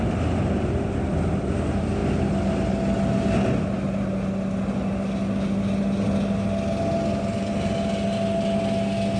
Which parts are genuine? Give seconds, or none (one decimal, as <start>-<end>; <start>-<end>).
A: 0.0-9.2